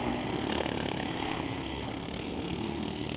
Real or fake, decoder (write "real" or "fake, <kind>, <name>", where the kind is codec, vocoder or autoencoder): fake, codec, SNAC